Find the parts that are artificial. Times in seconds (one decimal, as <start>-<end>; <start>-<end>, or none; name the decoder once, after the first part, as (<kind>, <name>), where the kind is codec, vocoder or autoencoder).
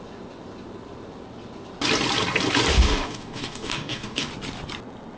2.7-4.3 (codec, DAC)